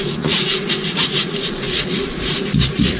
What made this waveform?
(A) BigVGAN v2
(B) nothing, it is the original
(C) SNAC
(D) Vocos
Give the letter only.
D